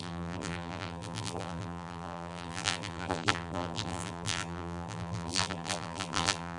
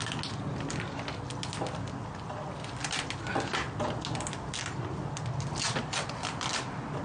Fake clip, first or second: first